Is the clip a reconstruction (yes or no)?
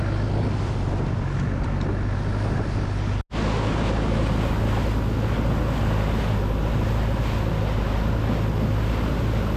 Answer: no